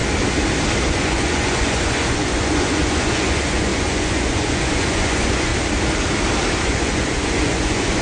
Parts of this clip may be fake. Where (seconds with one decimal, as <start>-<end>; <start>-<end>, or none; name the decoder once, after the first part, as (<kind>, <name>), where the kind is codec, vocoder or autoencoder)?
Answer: 0.9-5.5 (vocoder, Vocos); 6.6-8.0